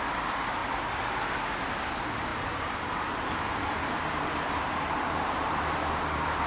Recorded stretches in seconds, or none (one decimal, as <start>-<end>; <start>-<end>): 0.0-2.3; 5.6-6.5